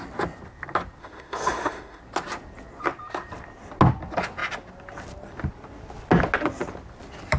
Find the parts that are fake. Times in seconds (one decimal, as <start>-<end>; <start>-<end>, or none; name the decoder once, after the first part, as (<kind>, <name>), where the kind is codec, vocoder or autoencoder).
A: 1.0-2.0 (autoencoder, DAC-VAE)